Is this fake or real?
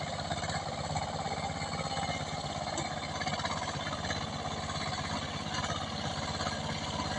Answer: real